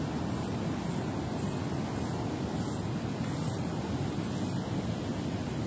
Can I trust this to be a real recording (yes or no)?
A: yes